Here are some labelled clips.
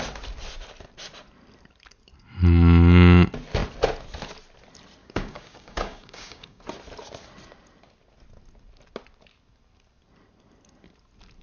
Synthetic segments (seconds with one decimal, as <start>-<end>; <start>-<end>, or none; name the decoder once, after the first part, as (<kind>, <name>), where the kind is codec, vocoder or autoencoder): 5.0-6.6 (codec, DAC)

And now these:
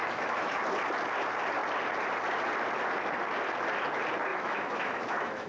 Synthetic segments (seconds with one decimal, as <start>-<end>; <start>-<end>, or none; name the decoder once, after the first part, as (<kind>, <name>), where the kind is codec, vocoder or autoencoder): 0.0-0.6 (autoencoder, DAC-VAE); 4.3-5.5

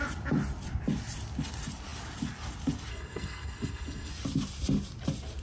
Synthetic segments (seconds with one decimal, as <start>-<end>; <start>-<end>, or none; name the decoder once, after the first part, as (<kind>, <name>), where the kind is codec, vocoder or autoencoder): 2.9-4.1 (codec, SNAC)

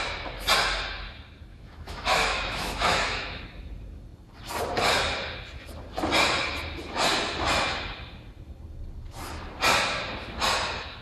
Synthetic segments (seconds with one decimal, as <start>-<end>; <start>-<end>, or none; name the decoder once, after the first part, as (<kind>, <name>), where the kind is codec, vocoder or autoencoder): 1.5-3.4 (autoencoder, DAC-VAE)